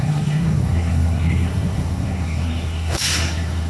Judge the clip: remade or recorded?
remade